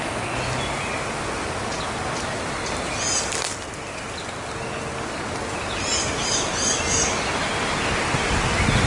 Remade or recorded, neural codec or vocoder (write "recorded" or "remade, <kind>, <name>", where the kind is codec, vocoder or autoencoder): recorded